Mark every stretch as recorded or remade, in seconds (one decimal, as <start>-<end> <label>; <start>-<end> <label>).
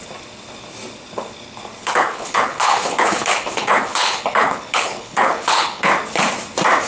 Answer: 0.0-1.8 recorded; 1.8-5.9 remade; 5.9-6.9 recorded